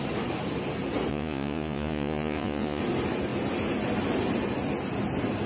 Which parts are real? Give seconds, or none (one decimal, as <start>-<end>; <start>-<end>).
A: 0.0-1.1; 2.8-5.5